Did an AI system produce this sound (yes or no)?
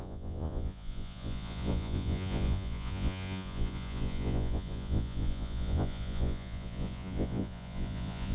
yes